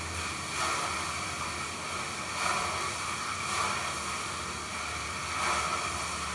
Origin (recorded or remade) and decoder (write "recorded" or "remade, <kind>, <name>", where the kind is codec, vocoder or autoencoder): recorded